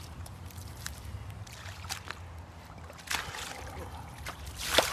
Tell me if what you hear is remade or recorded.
remade